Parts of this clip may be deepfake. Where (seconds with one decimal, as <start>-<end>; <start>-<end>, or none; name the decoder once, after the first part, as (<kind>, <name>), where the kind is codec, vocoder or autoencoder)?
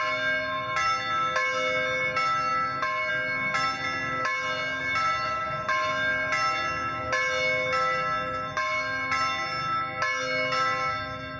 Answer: none